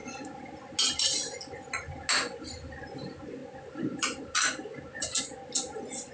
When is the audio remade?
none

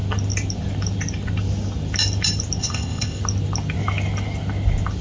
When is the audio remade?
2.6-3.2 (codec, ZipCodec)

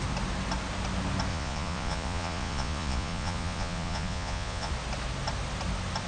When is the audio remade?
1.3-4.7 (vocoder, Vocos)

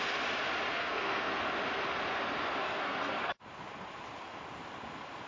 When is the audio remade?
0.7-1.4 (codec, SNAC); 2.6-3.4

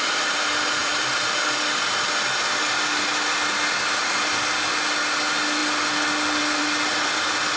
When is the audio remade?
0.8-1.9 (vocoder, BigVGAN v2)

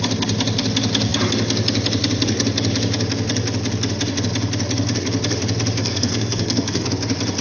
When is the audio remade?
5.8-6.9 (codec, SNAC)